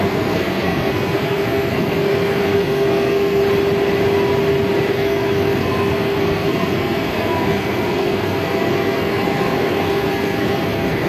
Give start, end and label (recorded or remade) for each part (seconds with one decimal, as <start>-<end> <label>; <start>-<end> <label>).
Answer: 0.0-3.4 remade; 3.4-4.9 recorded; 4.9-11.1 remade